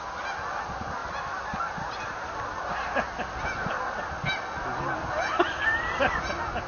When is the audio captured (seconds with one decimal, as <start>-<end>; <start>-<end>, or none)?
0.0-6.7